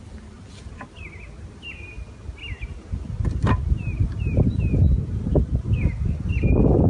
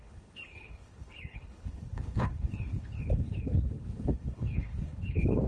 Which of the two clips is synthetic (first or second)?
second